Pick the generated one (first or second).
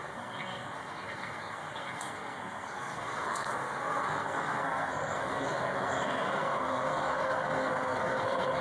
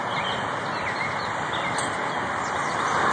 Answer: first